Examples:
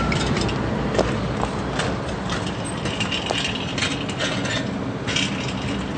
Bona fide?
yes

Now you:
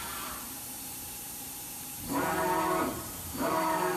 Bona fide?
no